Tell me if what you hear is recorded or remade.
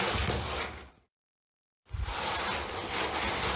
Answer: recorded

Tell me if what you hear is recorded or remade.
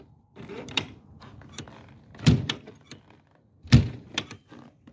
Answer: remade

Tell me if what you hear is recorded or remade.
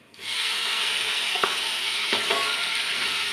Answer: remade